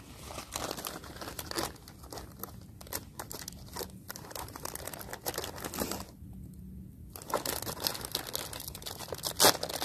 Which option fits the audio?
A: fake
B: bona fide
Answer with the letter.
B